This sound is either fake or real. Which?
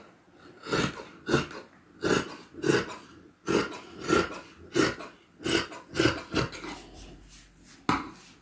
real